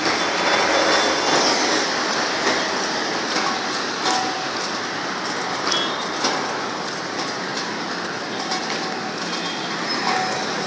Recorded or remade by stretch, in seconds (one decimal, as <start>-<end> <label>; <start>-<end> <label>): 0.0-10.7 recorded